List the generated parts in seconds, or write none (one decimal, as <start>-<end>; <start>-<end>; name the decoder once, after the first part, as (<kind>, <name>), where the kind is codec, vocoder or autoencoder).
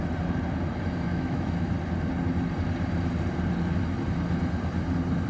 1.1-1.7 (autoencoder, DAC-VAE)